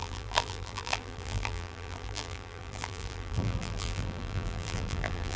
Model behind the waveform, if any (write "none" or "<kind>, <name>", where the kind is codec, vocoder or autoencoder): vocoder, BigVGAN v2